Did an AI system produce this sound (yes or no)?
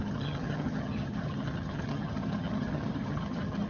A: yes